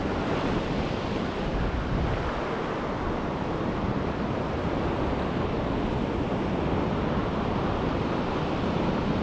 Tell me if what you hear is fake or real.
real